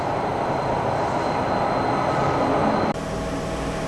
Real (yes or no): yes